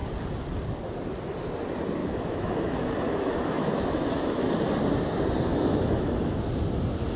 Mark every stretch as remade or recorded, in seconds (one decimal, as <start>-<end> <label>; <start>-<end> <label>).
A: 0.0-2.0 recorded; 2.0-4.4 remade; 4.4-5.5 recorded; 5.5-6.1 remade; 6.1-7.2 recorded